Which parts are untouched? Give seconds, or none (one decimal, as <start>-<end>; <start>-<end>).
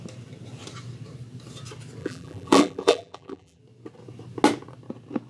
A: 0.0-2.0; 3.6-5.3